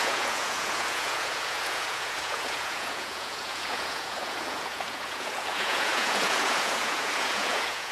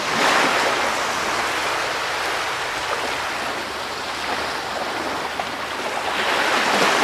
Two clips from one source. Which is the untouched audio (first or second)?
second